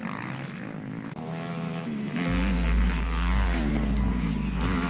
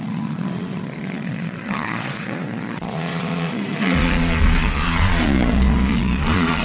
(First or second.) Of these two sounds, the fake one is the second